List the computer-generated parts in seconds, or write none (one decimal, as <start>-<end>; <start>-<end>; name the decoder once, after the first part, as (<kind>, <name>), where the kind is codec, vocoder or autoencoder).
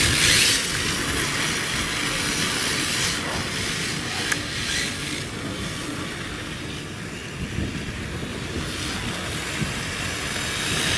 none